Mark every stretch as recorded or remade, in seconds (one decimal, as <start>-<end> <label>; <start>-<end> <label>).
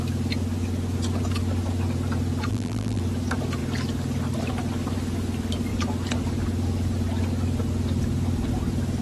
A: 0.0-2.5 recorded; 2.5-3.0 remade; 3.0-9.0 recorded